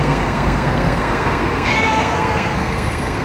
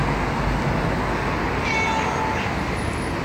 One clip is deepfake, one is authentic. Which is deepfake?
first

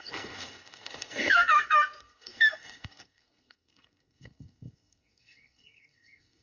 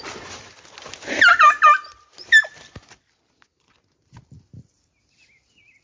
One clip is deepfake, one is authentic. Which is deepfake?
first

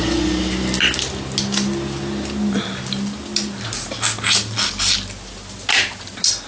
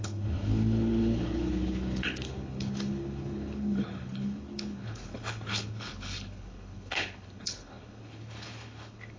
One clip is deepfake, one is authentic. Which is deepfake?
second